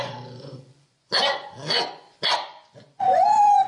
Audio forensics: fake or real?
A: fake